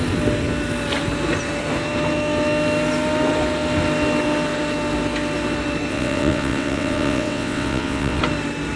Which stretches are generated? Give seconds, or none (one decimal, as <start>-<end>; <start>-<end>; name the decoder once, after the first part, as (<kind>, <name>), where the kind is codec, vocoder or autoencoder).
5.9-8.2 (vocoder, WaveNeXt)